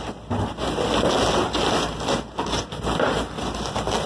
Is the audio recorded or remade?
recorded